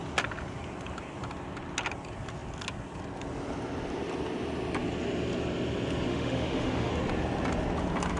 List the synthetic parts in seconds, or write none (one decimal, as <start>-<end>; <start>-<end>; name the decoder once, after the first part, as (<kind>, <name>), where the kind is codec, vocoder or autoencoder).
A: 6.1-6.9 (autoencoder, DAC-VAE)